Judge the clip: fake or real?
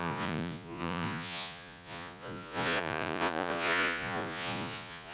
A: fake